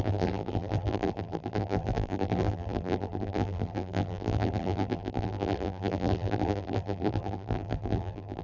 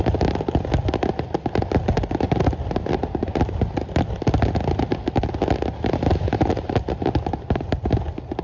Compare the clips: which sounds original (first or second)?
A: second